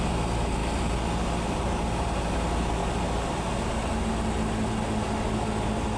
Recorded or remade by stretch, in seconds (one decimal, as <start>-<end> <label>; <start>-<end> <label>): 0.0-6.0 recorded